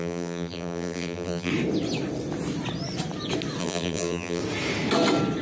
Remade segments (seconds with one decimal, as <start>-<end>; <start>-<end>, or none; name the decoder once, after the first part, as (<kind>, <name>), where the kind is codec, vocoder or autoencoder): 0.0-1.5 (vocoder, BigVGAN v2); 3.6-4.4